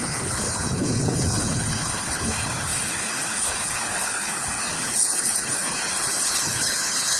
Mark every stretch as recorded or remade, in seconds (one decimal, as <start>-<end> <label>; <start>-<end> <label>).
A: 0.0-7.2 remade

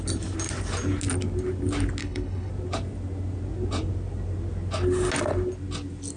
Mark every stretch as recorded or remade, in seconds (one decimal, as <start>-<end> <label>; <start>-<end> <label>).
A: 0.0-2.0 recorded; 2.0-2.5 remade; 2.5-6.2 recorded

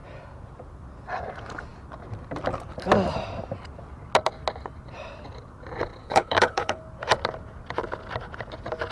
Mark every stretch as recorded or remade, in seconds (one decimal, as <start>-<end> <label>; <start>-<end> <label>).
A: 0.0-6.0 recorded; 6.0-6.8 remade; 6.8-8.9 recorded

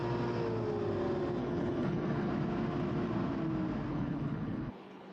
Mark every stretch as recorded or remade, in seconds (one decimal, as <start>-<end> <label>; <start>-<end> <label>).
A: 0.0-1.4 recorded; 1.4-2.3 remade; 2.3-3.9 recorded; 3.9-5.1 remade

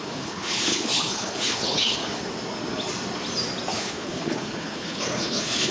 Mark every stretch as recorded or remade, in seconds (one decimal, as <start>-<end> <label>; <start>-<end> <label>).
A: 0.0-2.0 remade; 2.0-3.7 recorded; 3.7-5.7 remade